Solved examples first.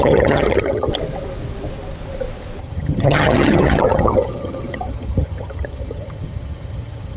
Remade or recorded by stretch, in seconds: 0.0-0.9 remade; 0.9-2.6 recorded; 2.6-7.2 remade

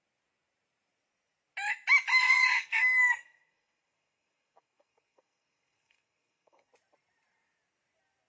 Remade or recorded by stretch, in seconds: 0.0-2.1 recorded; 2.1-6.7 remade; 6.7-8.3 recorded

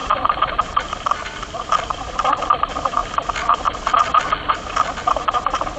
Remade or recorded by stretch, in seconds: 0.0-1.6 remade; 1.6-5.8 recorded

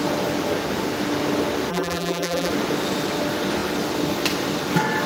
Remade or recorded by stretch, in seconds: 0.0-1.7 recorded; 1.7-2.5 remade; 2.5-5.1 recorded

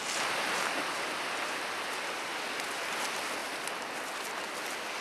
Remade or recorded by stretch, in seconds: 0.0-5.0 recorded

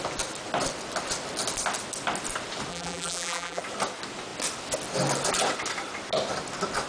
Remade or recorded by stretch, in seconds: 0.0-2.7 recorded; 2.7-3.6 remade; 3.6-6.9 recorded

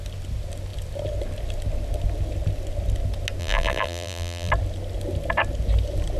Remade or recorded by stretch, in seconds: 0.0-3.4 recorded; 3.4-4.5 remade; 4.5-6.2 recorded